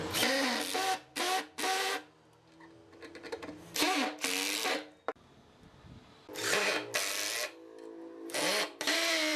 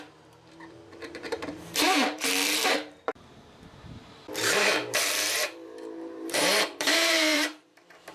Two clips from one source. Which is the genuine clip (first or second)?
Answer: first